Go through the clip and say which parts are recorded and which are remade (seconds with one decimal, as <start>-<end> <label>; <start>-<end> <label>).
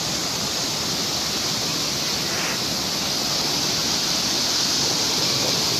0.0-5.8 recorded